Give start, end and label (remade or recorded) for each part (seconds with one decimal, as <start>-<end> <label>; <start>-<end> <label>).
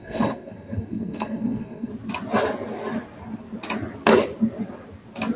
0.0-1.9 remade; 1.9-5.4 recorded